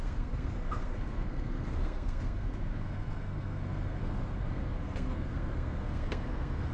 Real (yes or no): no